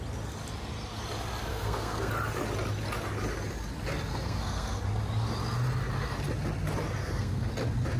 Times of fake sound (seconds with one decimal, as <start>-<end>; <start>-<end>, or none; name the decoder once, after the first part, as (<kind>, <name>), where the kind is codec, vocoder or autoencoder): 1.5-2.1 (codec, SNAC); 4.1-4.8; 7.0-7.5